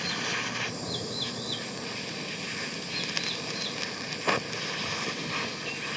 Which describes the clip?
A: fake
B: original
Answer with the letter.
B